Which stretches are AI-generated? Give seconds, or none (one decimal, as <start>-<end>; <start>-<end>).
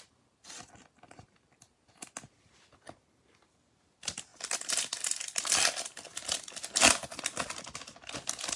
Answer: none